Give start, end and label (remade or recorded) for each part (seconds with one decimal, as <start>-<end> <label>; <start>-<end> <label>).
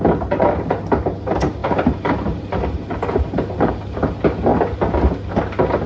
0.0-1.6 recorded; 1.6-3.7 remade; 3.7-5.9 recorded